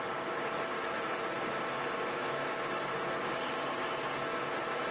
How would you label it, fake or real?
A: real